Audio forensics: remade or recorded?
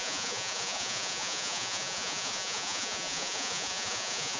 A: remade